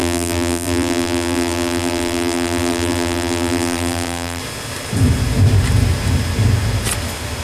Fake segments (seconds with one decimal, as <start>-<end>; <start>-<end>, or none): 0.0-4.4